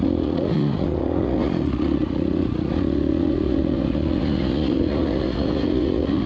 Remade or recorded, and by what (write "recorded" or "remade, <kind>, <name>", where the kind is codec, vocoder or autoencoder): remade, vocoder, Vocos